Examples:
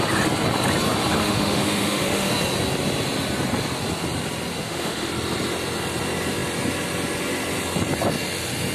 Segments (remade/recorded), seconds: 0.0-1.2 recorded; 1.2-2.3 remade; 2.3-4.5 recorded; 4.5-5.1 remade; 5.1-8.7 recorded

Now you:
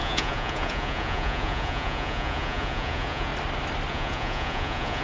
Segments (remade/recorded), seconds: 0.0-3.3 remade; 3.3-3.9 recorded; 3.9-5.0 remade

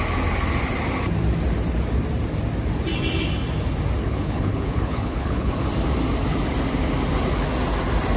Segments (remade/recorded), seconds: 0.0-4.0 recorded; 4.0-5.5 remade; 5.5-8.2 recorded

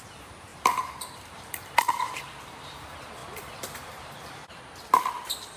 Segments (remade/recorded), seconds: 0.0-4.4 remade; 4.4-5.6 recorded

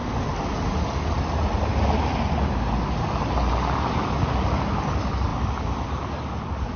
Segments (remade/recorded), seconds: 0.0-6.8 recorded